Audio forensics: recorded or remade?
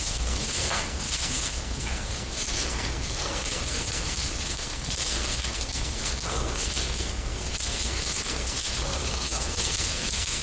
remade